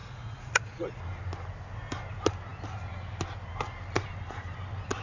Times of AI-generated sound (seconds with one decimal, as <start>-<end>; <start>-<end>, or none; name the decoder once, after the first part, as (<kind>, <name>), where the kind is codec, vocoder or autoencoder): 0.0-1.0 (vocoder, Vocos)